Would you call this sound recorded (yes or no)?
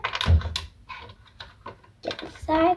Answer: yes